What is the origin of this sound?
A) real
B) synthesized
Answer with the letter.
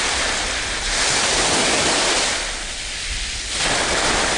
A